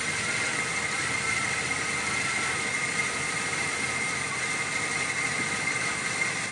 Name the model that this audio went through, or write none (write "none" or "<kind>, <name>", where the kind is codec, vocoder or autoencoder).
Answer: vocoder, BigVGAN v2